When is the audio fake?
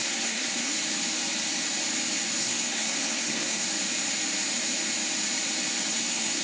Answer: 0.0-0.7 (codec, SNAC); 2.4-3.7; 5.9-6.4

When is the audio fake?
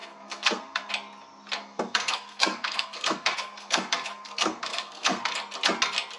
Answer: 0.0-0.9 (codec, SNAC); 1.6-5.3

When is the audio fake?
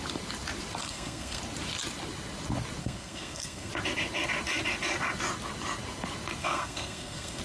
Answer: 0.8-1.4 (codec, SNAC); 2.8-3.7; 6.4-7.4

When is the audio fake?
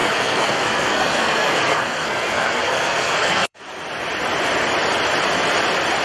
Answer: 0.0-3.6 (codec, SNAC)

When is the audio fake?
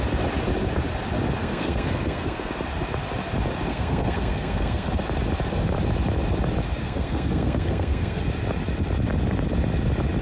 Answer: 1.4-2.5 (codec, SNAC); 3.7-4.9; 6.8-8.2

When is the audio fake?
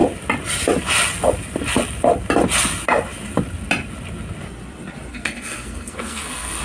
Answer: 5.1-6.6 (codec, SNAC)